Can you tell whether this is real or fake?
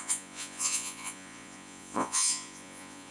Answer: fake